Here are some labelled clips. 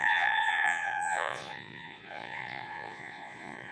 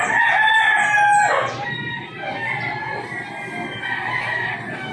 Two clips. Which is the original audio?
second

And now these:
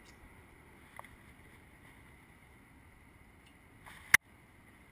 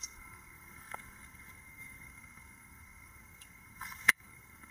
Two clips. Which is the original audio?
first